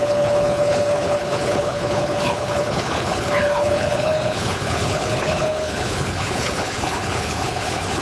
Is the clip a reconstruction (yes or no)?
yes